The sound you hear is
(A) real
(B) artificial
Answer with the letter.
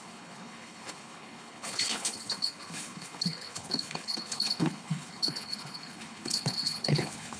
B